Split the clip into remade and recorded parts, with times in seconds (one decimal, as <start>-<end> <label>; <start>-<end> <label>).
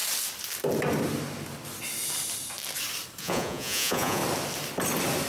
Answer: 0.0-3.2 recorded; 3.2-4.2 remade; 4.2-5.3 recorded